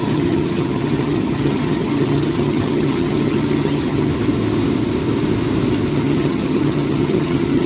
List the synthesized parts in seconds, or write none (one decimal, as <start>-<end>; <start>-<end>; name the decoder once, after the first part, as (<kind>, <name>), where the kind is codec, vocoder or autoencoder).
0.0-4.1 (vocoder, HiFi-GAN); 5.9-7.7